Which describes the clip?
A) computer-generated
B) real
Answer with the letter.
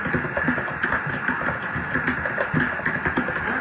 B